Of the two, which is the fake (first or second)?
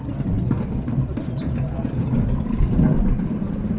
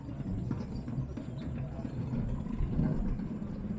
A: first